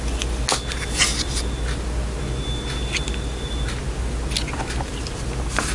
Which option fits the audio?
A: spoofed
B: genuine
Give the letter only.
B